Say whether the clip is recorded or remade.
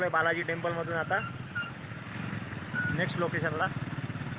recorded